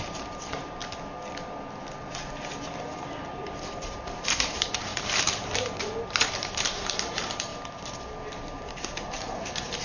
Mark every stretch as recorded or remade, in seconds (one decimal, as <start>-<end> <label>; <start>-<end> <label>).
0.0-0.8 remade; 0.8-3.0 recorded; 3.0-7.5 remade; 7.5-8.7 recorded; 8.7-9.8 remade